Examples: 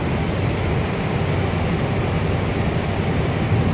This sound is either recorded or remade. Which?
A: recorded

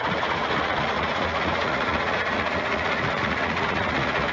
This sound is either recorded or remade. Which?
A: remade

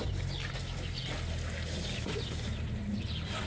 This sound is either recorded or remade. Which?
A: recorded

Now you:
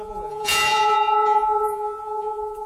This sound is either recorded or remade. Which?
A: remade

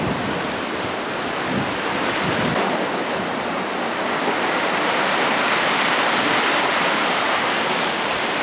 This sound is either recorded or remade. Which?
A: recorded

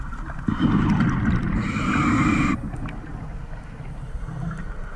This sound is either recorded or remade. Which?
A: recorded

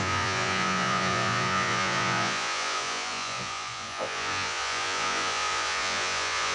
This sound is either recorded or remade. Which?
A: remade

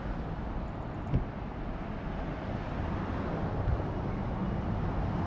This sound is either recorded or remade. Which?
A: recorded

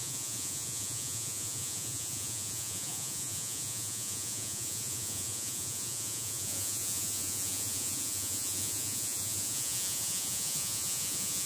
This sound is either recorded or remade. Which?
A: remade